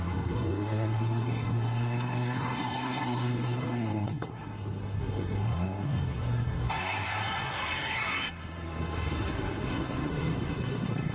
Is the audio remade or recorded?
remade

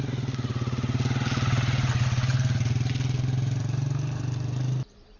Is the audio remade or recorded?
recorded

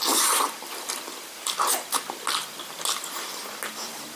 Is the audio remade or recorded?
recorded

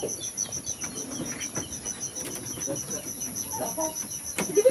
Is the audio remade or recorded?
recorded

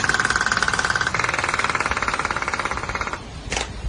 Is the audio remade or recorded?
recorded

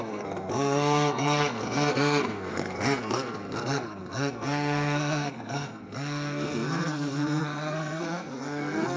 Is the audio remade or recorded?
remade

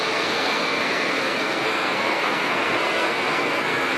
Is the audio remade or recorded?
remade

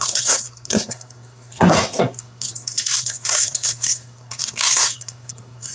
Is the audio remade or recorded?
remade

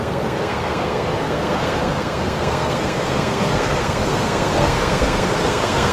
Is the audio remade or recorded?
remade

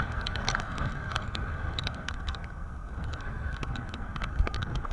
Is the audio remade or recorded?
remade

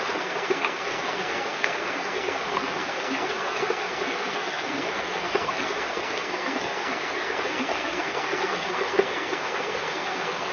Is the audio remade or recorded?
remade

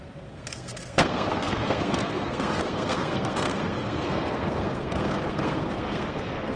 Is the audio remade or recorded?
remade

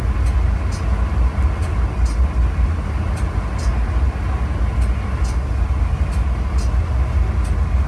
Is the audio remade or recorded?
recorded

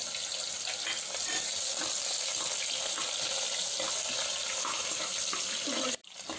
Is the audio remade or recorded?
recorded